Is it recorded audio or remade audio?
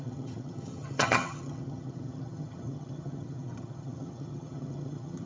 remade